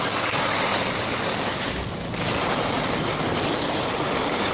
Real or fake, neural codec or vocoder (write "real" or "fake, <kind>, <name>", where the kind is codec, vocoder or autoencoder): real